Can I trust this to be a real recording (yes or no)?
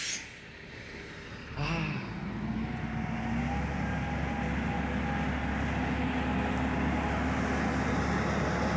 yes